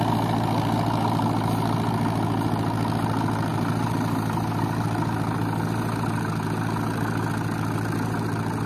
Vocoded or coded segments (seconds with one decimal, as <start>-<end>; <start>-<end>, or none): none